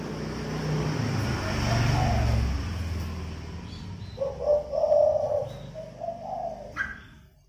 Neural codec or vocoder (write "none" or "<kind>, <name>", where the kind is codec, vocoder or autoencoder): none